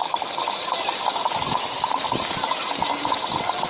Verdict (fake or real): real